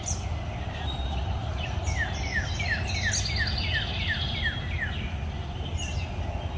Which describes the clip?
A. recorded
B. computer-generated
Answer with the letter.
A